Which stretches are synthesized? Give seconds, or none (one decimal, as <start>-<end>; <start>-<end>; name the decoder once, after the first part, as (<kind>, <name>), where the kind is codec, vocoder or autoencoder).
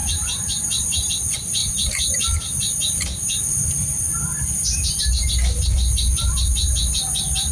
0.0-1.1 (vocoder, BigVGAN v2)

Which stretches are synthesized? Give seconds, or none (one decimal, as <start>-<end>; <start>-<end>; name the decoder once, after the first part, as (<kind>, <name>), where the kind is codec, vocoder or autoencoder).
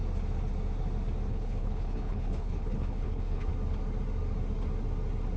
1.3-3.5 (codec, HILCodec)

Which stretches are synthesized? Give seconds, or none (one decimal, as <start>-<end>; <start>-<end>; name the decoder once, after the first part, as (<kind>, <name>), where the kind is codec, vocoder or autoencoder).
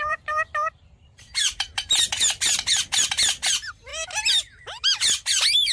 0.0-3.9 (vocoder, BigVGAN v2); 4.6-5.7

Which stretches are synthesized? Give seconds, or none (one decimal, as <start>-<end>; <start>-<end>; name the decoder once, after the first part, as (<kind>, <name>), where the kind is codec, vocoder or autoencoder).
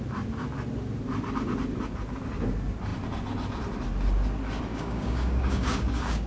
4.7-6.3 (codec, DAC)